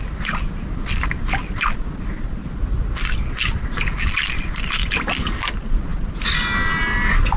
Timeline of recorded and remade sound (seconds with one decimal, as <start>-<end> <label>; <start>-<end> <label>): 0.0-7.4 recorded